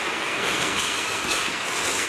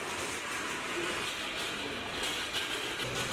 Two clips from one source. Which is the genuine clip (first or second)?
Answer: second